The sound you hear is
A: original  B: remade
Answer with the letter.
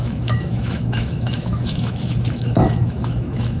B